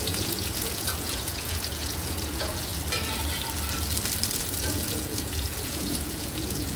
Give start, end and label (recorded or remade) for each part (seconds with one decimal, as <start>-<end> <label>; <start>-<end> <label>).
0.0-2.7 remade; 2.7-4.4 recorded; 4.4-6.8 remade